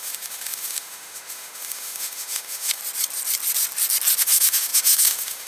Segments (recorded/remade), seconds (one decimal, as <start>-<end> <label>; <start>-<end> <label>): 0.0-2.8 remade; 2.8-4.2 recorded; 4.2-5.5 remade